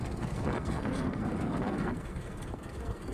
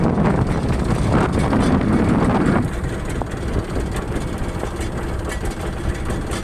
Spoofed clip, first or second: first